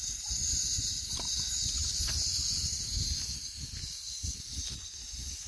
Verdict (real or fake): real